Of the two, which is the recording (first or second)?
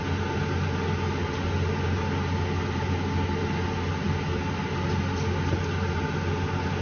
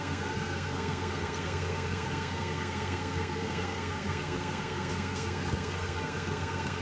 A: first